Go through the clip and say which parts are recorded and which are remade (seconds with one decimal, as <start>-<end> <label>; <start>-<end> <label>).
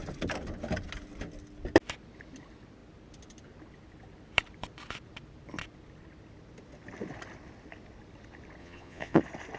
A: 0.0-8.6 recorded; 8.6-9.2 remade; 9.2-9.6 recorded